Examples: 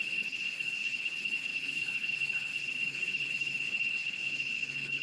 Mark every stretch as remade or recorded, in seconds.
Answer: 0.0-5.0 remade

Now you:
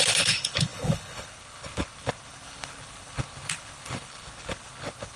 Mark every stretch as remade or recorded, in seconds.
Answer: 0.0-5.2 remade

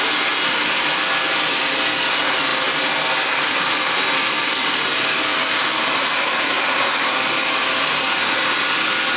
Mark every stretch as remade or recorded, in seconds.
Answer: 0.0-9.2 recorded

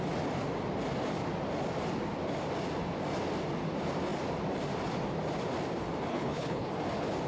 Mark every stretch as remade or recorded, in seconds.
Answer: 0.0-6.1 recorded; 6.1-6.7 remade; 6.7-7.3 recorded

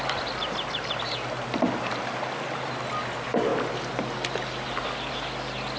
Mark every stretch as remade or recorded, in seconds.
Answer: 0.0-5.8 recorded

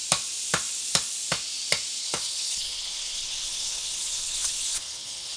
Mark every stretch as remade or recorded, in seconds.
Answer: 0.0-2.0 recorded; 2.0-5.4 remade